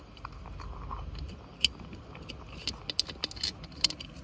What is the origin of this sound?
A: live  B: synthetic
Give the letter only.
A